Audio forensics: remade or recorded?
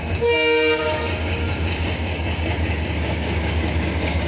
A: remade